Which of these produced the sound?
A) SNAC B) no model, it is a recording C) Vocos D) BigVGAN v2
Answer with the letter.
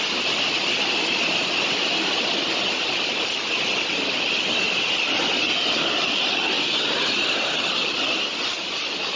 B